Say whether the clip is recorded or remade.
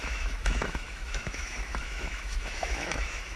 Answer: remade